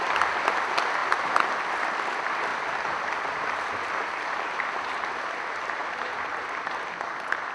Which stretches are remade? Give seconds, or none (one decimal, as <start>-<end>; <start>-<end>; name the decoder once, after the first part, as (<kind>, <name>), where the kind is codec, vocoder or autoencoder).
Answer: none

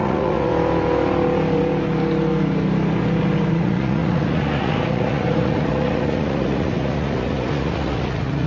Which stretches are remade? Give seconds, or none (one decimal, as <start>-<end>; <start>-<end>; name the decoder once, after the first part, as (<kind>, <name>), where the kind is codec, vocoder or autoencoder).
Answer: 0.0-0.5 (vocoder, Vocos); 3.5-8.5

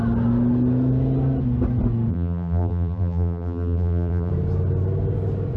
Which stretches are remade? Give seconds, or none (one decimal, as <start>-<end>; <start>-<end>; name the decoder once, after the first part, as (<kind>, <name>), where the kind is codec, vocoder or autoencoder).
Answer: 2.1-4.3 (vocoder, BigVGAN v2)

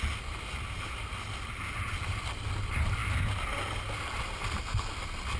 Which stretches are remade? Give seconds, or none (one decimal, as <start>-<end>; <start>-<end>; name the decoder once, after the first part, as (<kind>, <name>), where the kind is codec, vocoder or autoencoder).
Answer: none

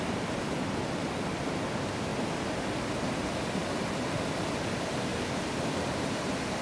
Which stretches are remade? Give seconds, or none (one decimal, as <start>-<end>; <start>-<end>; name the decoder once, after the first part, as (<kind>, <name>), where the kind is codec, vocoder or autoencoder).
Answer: 0.0-2.1 (vocoder, BigVGAN v2); 4.1-6.6

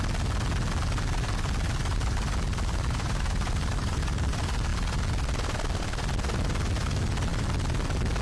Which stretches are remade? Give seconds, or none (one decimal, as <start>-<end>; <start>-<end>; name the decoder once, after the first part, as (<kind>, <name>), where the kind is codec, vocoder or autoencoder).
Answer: 1.9-4.3 (vocoder, BigVGAN v2)

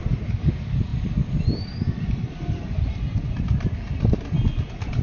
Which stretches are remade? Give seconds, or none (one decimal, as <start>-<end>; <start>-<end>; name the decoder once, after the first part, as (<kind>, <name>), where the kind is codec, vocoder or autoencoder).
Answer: none

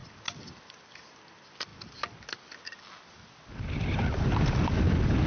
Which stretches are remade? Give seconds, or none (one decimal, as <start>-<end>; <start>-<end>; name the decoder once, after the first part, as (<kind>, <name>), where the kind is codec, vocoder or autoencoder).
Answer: none